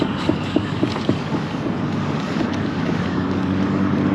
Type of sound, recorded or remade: remade